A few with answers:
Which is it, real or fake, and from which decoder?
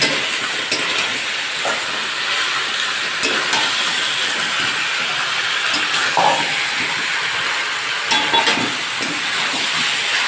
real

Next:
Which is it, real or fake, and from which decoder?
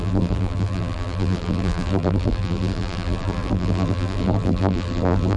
fake, vocoder, BigVGAN v2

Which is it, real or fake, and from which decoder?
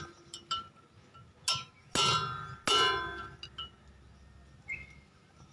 real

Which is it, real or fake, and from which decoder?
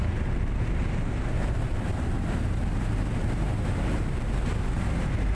fake, vocoder, BigVGAN v2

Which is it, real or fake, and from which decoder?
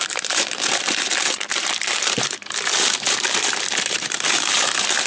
fake, vocoder, BigVGAN v2